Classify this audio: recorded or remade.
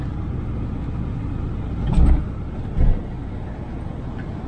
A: recorded